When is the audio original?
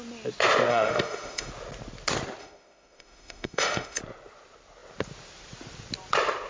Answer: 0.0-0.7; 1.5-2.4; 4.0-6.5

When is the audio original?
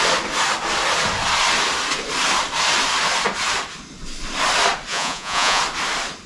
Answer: 0.0-4.9; 5.6-6.3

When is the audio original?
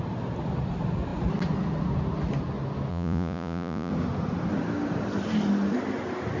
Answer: 0.0-2.9; 3.9-6.4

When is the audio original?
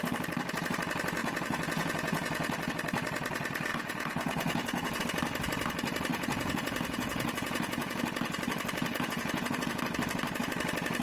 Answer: 0.0-1.2; 2.7-3.7; 5.0-6.1; 8.0-8.9; 9.8-11.0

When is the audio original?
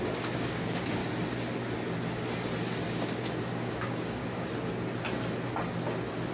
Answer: 1.0-2.9; 4.2-6.3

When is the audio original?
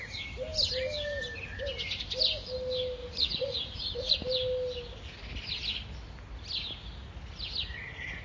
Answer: 0.0-3.0; 4.1-8.2